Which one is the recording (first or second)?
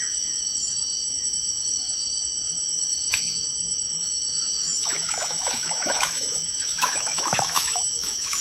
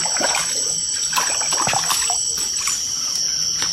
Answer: second